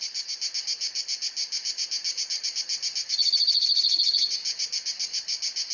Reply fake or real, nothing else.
real